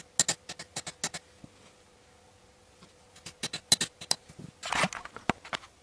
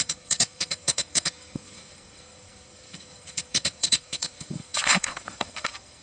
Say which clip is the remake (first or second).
second